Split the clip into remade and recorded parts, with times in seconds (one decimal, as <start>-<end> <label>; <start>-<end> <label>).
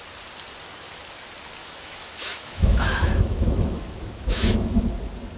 0.0-1.6 recorded; 1.6-4.8 remade; 4.8-5.4 recorded